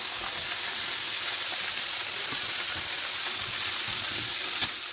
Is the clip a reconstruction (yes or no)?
no